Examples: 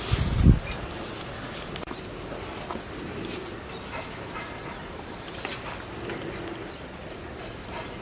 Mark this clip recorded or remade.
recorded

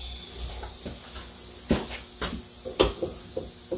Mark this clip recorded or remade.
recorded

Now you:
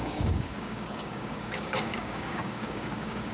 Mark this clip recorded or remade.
remade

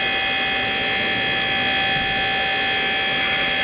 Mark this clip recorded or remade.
recorded